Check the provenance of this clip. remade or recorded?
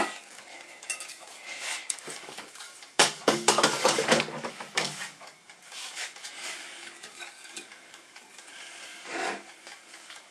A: remade